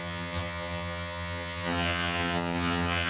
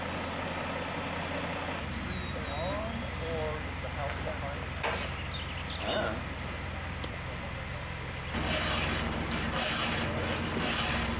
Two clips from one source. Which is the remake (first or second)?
first